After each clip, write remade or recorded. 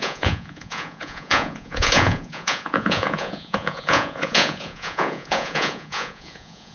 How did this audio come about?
remade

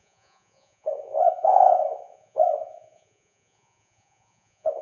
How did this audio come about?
remade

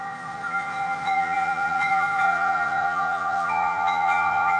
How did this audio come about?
remade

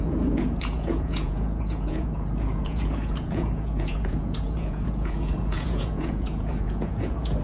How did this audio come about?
remade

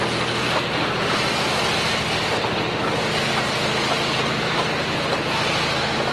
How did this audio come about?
recorded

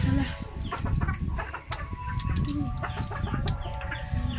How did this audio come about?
recorded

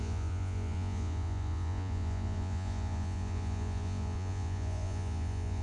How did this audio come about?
remade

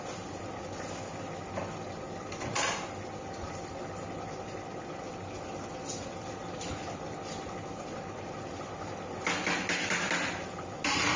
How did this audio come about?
recorded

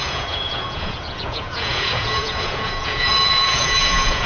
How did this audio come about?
remade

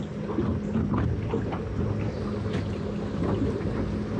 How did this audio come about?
recorded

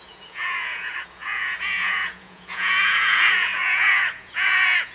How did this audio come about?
remade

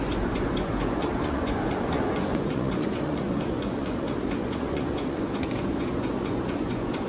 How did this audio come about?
remade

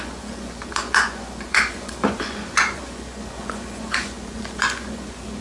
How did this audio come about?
remade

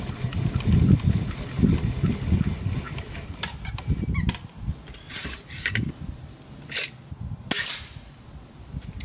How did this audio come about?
recorded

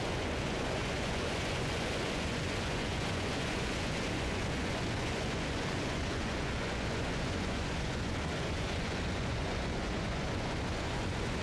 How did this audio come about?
remade